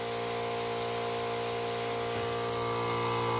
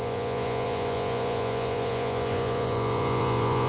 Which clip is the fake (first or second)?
second